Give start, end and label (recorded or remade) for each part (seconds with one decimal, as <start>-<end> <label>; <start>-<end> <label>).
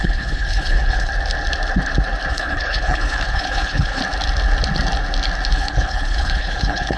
0.0-1.1 remade; 1.1-2.3 recorded; 2.3-4.0 remade; 4.0-5.5 recorded; 5.5-7.0 remade